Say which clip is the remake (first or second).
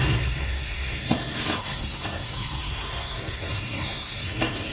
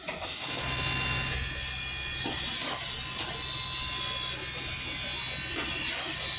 first